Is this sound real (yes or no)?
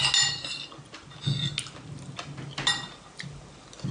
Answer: yes